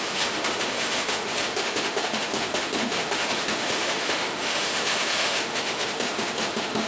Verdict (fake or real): fake